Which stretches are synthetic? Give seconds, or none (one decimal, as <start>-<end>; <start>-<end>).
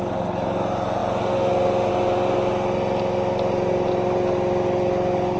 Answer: none